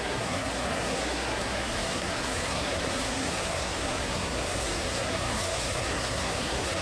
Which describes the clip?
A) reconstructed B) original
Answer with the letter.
A